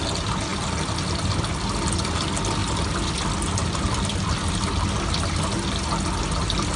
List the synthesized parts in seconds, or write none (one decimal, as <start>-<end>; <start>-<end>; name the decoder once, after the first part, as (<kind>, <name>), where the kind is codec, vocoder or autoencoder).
none